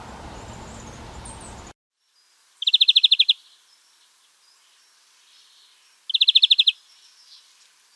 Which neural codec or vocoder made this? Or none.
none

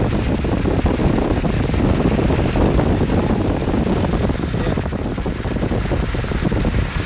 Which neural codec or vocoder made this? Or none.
none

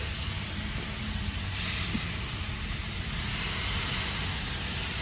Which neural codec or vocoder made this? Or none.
none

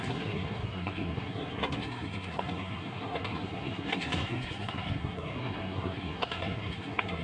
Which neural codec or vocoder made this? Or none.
codec, SNAC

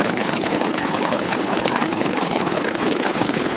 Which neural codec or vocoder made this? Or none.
codec, HILCodec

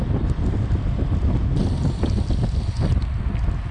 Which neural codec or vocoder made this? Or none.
none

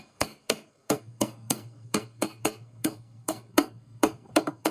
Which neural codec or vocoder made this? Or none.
codec, SNAC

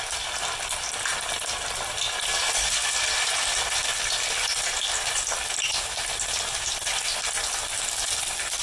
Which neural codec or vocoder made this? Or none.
none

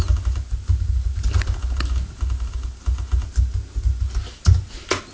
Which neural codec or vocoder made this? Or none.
none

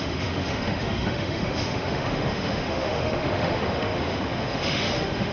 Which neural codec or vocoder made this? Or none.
autoencoder, DAC-VAE